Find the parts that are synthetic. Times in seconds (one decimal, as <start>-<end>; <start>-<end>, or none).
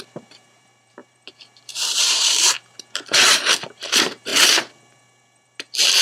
0.0-4.3